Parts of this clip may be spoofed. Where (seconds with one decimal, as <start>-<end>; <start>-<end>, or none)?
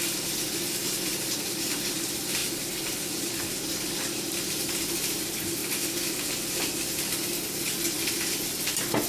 1.1-1.9